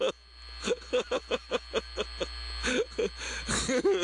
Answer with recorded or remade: recorded